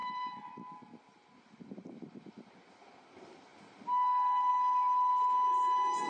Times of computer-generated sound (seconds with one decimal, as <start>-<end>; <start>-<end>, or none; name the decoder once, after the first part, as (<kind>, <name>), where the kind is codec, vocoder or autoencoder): none